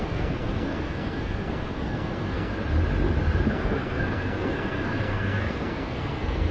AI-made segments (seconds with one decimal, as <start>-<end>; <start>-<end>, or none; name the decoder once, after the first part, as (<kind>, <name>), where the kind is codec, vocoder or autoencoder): 0.0-2.5 (codec, SNAC); 3.5-6.5